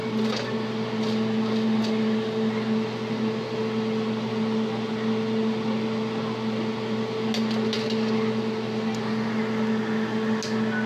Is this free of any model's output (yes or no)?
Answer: yes